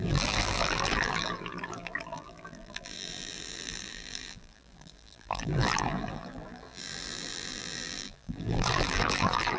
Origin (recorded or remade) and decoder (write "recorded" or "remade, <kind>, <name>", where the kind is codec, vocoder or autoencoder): remade, vocoder, BigVGAN v2